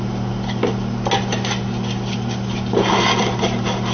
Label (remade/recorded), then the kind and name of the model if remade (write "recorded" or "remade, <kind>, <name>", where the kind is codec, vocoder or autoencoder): recorded